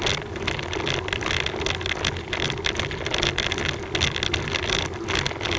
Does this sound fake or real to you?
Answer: real